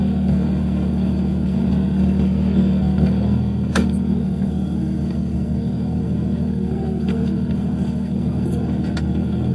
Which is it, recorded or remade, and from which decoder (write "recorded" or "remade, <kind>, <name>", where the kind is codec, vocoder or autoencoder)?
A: remade, codec, SNAC